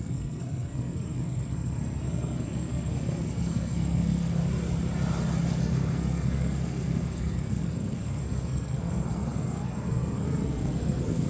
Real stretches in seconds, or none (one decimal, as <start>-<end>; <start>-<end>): 4.4-5.6